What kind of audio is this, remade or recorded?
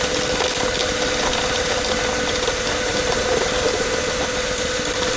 recorded